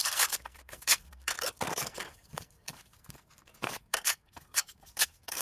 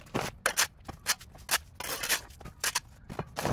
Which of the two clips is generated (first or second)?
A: first